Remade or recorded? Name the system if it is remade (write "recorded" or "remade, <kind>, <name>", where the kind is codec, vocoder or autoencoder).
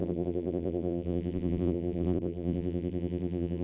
remade, vocoder, BigVGAN v2